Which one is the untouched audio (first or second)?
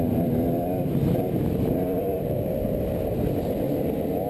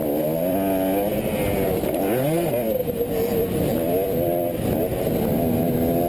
second